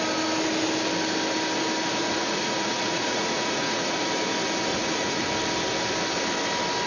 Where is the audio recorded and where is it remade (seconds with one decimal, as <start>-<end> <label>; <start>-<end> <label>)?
0.0-2.0 recorded; 2.0-4.0 remade; 4.0-4.7 recorded; 4.7-5.3 remade; 5.3-6.9 recorded